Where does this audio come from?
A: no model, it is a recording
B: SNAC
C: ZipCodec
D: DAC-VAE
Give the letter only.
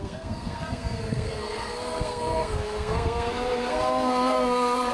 B